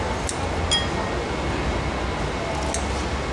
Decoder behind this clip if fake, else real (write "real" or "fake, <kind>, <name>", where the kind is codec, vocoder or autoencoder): real